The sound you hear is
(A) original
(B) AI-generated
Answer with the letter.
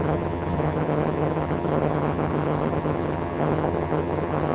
B